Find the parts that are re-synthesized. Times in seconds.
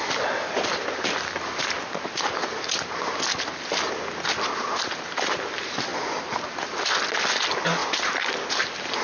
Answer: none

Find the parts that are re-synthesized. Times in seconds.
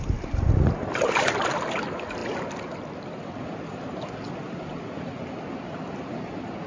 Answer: none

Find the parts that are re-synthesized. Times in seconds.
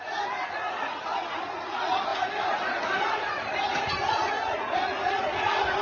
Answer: 0.0-5.8